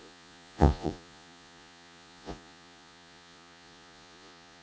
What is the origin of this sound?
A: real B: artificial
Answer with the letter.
B